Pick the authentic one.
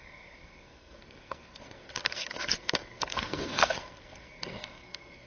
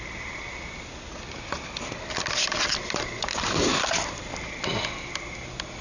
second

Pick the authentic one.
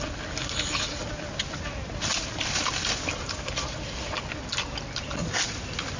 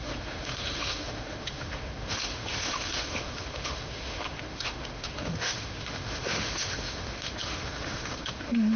first